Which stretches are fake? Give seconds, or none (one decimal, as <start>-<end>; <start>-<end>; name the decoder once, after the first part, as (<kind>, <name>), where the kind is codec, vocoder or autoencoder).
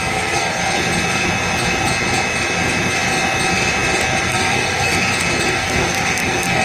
0.0-0.6 (codec, SNAC); 4.2-4.9; 5.5-6.6